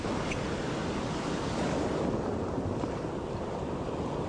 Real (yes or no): yes